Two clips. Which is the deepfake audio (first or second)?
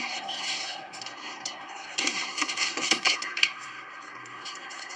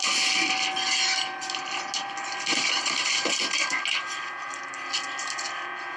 first